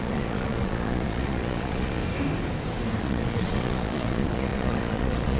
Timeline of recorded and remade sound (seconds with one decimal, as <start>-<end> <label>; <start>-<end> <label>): 0.0-2.0 remade; 2.0-3.0 recorded; 3.0-5.4 remade